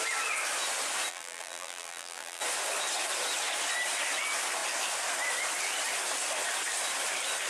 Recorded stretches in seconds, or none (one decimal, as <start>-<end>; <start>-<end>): 0.0-1.1; 2.4-7.5